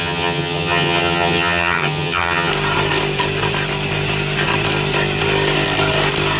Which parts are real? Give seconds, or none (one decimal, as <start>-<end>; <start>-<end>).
2.5-6.4